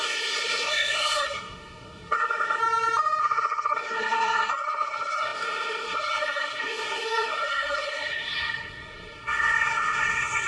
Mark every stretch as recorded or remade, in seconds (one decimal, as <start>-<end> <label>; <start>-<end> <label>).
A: 0.0-2.6 remade; 2.6-3.2 recorded; 3.2-10.5 remade